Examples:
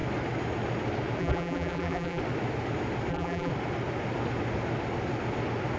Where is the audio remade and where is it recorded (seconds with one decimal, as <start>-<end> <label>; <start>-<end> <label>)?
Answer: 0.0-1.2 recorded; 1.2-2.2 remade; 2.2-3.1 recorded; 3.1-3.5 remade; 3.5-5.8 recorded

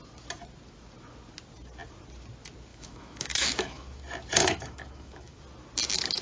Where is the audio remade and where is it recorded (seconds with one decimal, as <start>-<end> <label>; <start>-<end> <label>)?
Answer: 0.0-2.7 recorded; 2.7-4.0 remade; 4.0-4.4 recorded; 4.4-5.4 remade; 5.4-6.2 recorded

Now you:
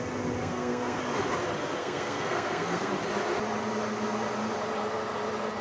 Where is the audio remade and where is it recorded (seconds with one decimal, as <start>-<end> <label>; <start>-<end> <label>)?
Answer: 0.0-0.4 recorded; 0.4-1.0 remade; 1.0-1.8 recorded; 1.8-2.9 remade; 2.9-5.6 recorded